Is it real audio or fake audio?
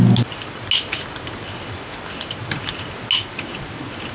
real